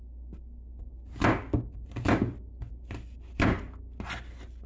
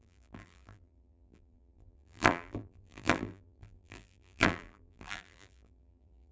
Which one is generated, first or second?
second